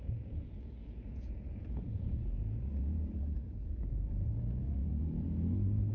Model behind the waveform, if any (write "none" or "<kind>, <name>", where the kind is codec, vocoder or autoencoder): vocoder, Vocos